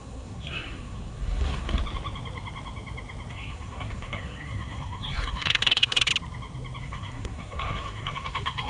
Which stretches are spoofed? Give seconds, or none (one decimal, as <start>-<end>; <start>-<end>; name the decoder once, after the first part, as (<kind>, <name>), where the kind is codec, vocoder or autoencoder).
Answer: 0.0-1.8 (codec, SNAC); 3.3-6.1; 6.8-8.7